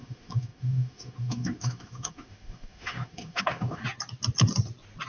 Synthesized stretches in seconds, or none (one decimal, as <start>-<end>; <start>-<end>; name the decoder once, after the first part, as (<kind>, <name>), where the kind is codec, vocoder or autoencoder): 0.0-3.8 (autoencoder, DAC-VAE)